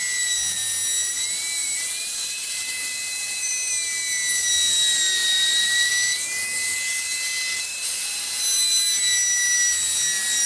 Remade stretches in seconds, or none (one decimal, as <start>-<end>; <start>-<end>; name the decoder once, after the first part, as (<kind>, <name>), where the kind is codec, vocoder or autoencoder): 1.6-3.5 (vocoder, BigVGAN v2); 5.2-5.9